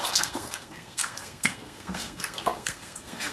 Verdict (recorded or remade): remade